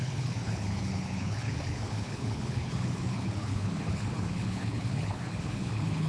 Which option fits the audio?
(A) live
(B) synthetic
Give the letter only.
B